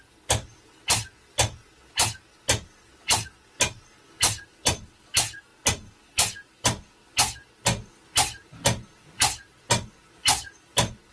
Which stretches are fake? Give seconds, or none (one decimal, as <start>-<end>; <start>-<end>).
none